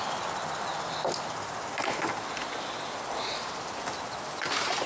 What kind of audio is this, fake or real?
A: real